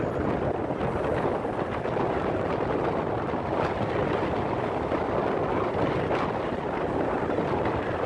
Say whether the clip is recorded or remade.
recorded